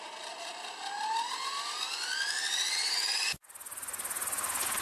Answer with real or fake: real